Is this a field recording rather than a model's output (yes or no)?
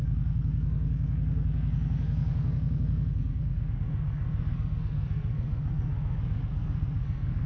no